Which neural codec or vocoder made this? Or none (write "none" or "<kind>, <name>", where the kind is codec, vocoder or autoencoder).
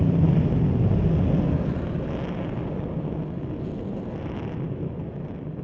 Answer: none